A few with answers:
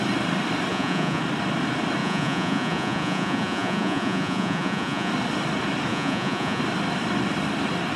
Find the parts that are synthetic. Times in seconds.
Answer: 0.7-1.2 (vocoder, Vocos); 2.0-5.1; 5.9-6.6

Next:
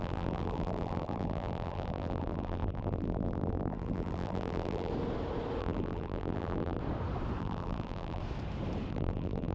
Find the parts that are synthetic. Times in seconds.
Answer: 0.0-4.9 (vocoder, BigVGAN v2); 5.6-6.8; 7.4-8.2; 8.9-9.5

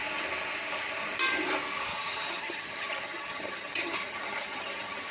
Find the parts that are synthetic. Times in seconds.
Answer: 1.9-5.1 (vocoder, HiFi-GAN)

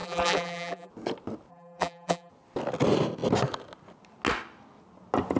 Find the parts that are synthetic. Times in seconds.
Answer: 0.0-0.9 (vocoder, BigVGAN v2); 1.5-2.3

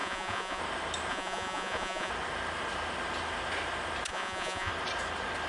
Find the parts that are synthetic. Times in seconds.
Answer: 0.0-0.6 (vocoder, Vocos); 1.1-2.1; 4.1-4.7

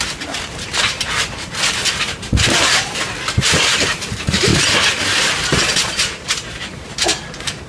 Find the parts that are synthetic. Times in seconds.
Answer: 0.0-4.5 (vocoder, BigVGAN v2); 5.2-7.7